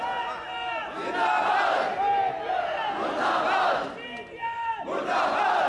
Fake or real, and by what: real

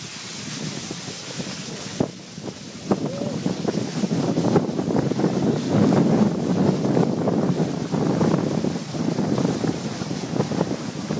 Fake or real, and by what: real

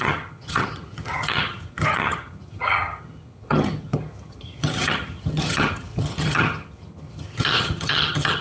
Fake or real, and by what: fake, vocoder, HiFi-GAN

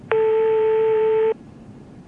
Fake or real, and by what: fake, vocoder, BigVGAN v2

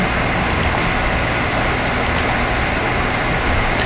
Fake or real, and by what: real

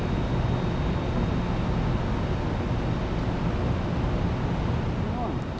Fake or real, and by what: real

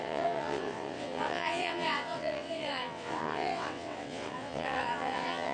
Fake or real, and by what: fake, vocoder, WaveNeXt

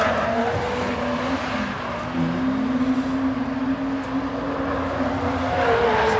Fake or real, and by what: real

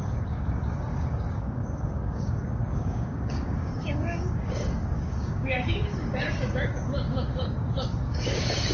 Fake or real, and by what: fake, codec, DAC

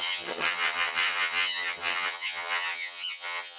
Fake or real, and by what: fake, vocoder, HiFi-GAN